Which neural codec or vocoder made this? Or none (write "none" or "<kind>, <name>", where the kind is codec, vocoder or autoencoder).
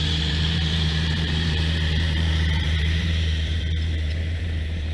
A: vocoder, BigVGAN v2